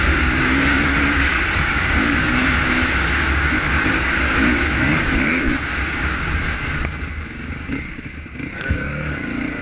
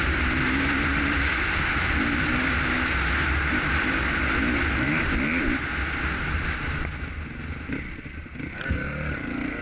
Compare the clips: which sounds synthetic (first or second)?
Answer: first